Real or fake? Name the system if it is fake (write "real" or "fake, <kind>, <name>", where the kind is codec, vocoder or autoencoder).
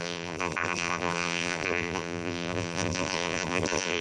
fake, vocoder, BigVGAN v2